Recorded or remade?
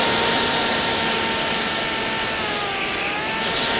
recorded